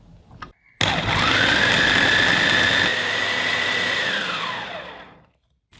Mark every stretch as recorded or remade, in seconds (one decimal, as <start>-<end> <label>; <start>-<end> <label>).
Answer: 0.0-2.9 recorded; 2.9-4.4 remade; 4.4-5.8 recorded